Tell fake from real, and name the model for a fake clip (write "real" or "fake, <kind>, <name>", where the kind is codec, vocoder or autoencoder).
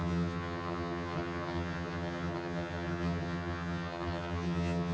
fake, vocoder, HiFi-GAN